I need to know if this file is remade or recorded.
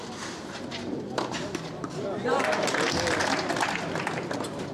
recorded